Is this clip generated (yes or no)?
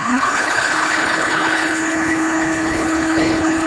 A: yes